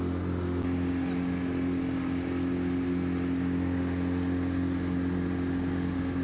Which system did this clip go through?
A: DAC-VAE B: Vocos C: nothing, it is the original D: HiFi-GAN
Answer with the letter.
C